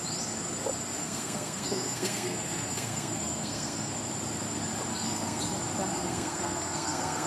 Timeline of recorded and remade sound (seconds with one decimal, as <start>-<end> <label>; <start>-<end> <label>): 0.0-1.0 recorded; 1.0-3.9 remade; 3.9-4.9 recorded; 4.9-5.4 remade; 5.4-5.9 recorded; 5.9-7.3 remade